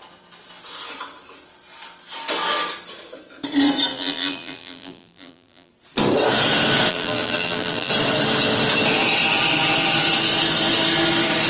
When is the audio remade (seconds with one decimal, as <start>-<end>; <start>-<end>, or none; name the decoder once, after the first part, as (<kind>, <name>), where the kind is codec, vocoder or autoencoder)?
3.9-5.7 (vocoder, BigVGAN v2); 6.9-7.9

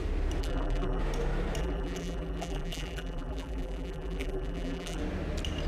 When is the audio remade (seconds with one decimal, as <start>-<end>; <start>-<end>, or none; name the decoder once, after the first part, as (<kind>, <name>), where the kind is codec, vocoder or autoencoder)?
0.4-1.0 (vocoder, BigVGAN v2); 1.6-5.0